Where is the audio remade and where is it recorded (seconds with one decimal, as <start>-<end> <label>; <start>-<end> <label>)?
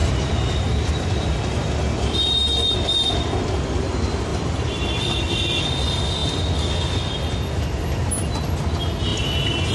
0.0-0.9 remade; 0.9-4.3 recorded; 4.3-5.4 remade; 5.4-9.7 recorded